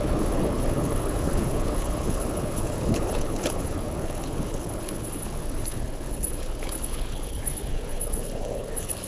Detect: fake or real fake